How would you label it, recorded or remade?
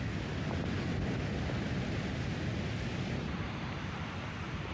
recorded